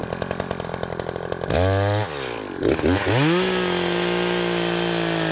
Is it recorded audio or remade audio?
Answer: recorded